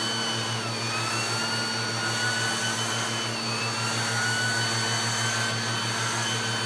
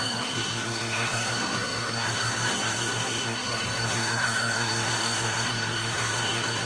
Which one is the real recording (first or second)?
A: first